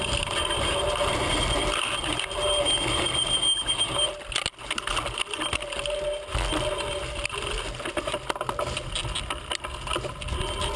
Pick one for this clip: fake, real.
real